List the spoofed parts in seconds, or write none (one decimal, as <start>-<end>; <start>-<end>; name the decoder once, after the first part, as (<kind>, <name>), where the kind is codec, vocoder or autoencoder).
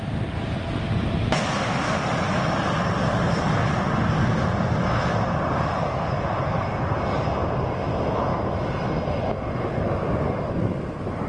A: none